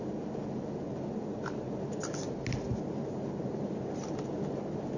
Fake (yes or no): no